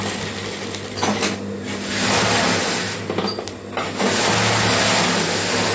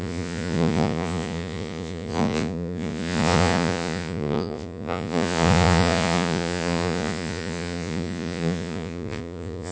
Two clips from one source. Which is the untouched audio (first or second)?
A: first